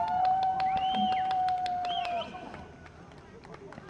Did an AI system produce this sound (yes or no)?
no